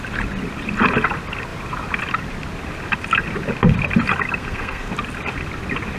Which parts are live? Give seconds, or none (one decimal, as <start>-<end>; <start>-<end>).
0.0-4.4; 4.9-6.0